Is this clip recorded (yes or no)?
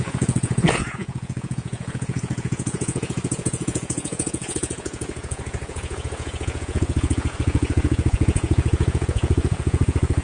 no